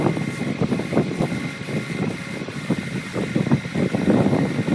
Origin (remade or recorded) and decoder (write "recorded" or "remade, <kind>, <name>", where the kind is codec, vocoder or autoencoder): recorded